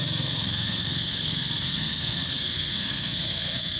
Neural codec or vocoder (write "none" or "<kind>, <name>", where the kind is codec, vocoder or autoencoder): codec, SNAC